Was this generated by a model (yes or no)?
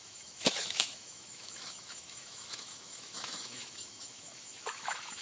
yes